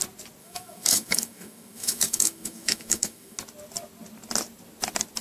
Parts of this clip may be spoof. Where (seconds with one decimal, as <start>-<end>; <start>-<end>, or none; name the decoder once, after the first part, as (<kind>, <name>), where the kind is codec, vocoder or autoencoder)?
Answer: 0.4-3.4 (autoencoder, DAC-VAE)